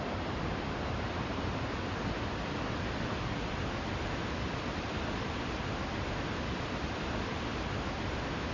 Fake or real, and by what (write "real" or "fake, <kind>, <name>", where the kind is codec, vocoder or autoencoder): fake, vocoder, BigVGAN v2